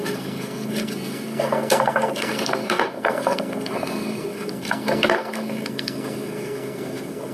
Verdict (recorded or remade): remade